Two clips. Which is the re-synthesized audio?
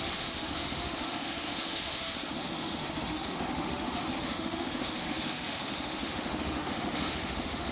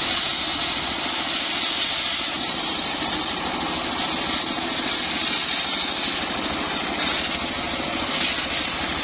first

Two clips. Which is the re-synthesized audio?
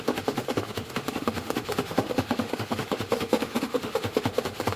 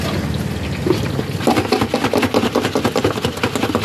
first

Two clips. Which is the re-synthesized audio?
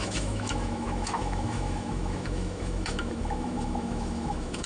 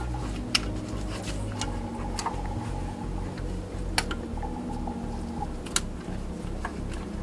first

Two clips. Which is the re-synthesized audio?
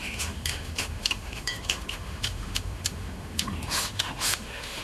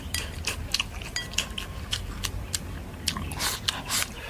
first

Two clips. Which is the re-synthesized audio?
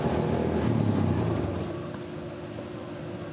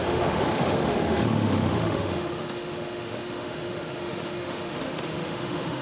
second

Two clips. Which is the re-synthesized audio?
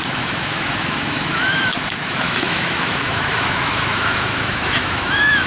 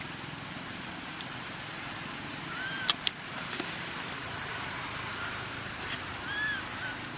first